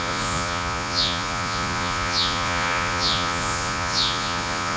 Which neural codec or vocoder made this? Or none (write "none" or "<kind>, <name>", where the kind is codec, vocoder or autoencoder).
vocoder, Vocos